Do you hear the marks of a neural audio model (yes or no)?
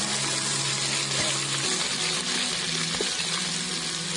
no